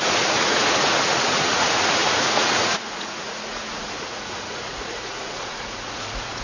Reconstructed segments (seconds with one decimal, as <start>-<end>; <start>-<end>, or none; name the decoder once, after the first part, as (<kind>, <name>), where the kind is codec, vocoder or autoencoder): 0.0-6.4 (vocoder, Vocos)